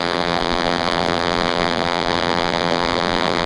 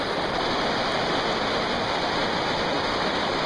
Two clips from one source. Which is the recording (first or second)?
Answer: second